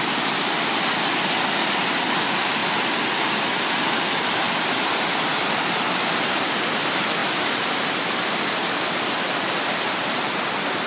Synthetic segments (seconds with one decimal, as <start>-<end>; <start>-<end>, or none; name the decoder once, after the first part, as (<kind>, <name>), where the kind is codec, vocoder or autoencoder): 7.2-10.3 (vocoder, BigVGAN v2)